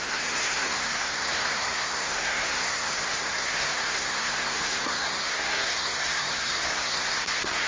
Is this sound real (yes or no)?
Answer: no